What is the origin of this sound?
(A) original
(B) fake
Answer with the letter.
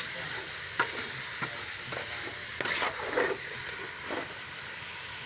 A